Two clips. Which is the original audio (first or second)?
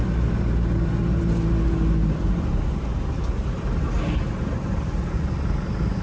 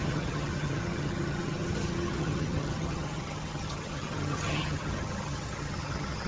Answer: first